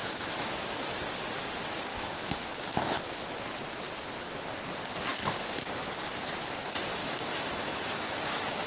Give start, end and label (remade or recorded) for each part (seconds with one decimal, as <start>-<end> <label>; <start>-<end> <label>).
0.0-0.8 remade; 0.8-1.9 recorded; 1.9-3.0 remade; 3.0-7.0 recorded; 7.0-8.7 remade